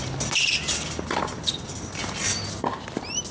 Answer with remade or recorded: recorded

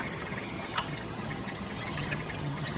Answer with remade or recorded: remade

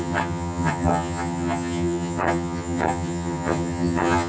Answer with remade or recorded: remade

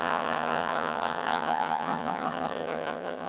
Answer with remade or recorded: remade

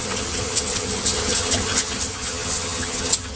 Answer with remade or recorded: remade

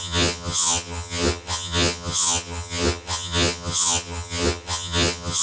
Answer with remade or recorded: remade